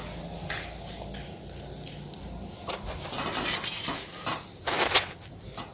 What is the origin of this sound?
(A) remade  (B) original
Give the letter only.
B